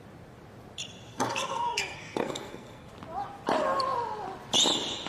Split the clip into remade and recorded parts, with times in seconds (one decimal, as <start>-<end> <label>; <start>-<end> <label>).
0.0-1.1 recorded; 1.1-2.9 remade; 2.9-5.1 recorded